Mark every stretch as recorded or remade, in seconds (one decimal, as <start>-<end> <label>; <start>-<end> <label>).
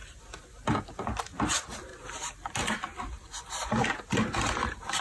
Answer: 0.0-5.0 recorded